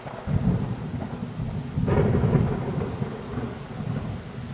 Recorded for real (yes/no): yes